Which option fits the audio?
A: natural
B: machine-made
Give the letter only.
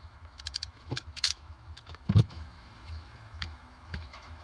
B